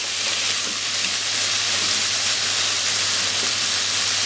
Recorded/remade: remade